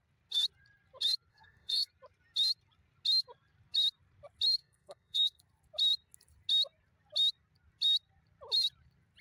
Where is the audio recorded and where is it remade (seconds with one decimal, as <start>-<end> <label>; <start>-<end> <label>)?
0.0-1.3 recorded; 1.3-1.9 remade; 1.9-4.6 recorded; 4.6-5.4 remade; 5.4-9.2 recorded